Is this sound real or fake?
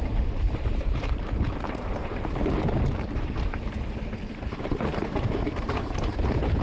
fake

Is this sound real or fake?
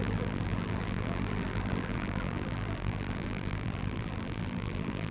fake